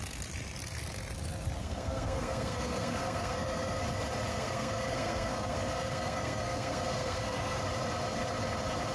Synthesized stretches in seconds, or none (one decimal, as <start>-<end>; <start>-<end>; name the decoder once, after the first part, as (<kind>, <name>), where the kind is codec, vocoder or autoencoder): 1.6-3.8 (codec, SNAC); 4.3-7.6